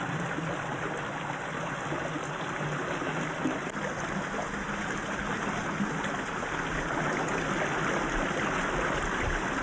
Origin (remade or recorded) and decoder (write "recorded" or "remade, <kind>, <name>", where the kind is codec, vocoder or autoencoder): recorded